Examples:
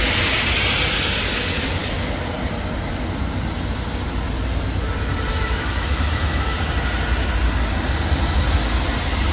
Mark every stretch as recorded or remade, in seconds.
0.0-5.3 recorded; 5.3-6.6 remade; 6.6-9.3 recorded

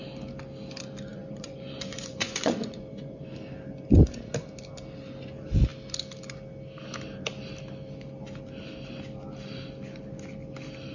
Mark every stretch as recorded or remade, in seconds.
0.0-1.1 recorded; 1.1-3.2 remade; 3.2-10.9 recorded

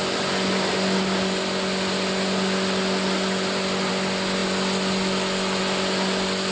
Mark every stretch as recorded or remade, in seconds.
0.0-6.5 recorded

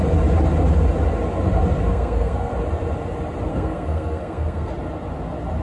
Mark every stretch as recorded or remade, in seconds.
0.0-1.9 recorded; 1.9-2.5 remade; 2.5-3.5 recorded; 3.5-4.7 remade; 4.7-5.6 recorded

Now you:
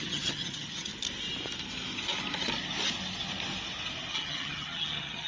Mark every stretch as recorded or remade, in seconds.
0.0-0.9 remade; 0.9-4.1 recorded; 4.1-5.3 remade

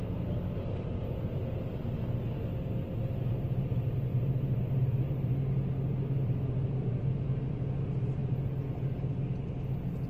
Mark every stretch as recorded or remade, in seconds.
0.0-10.1 recorded

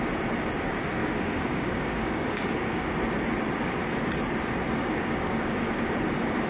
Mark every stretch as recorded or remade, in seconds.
0.0-1.0 recorded; 1.0-2.9 remade; 2.9-4.8 recorded; 4.8-5.9 remade; 5.9-6.5 recorded

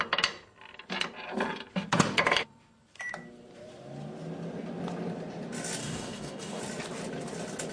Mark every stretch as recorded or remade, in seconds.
0.0-5.8 recorded; 5.8-6.6 remade; 6.6-7.7 recorded